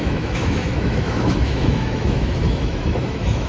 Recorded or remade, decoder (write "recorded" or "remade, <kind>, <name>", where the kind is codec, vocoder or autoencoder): remade, autoencoder, DAC-VAE